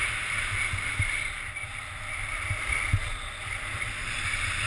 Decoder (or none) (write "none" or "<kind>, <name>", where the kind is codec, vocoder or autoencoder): none